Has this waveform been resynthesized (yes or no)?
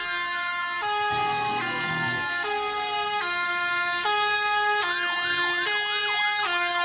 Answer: no